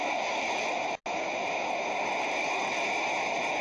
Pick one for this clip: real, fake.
real